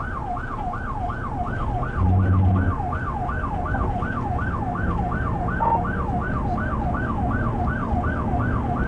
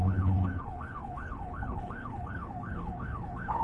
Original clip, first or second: first